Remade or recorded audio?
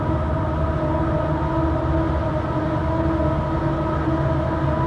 recorded